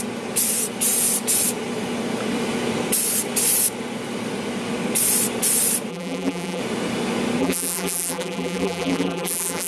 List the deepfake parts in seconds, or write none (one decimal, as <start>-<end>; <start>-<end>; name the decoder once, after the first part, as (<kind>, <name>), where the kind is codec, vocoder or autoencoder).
5.9-6.6 (vocoder, BigVGAN v2); 7.4-9.7